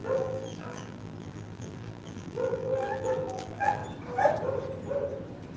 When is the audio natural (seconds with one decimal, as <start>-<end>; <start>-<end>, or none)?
3.8-5.6